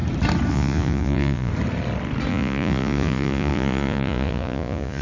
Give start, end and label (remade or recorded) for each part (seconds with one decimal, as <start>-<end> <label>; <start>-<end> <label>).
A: 0.0-0.5 recorded; 0.5-1.5 remade; 1.5-2.3 recorded; 2.3-5.0 remade